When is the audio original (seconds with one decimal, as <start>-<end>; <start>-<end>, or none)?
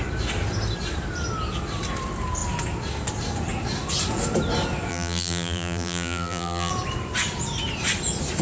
0.0-4.9; 6.7-8.4